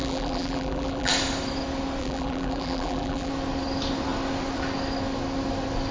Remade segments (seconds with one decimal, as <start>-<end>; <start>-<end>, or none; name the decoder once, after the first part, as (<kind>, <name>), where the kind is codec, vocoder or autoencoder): 0.0-1.1 (vocoder, BigVGAN v2); 2.0-3.3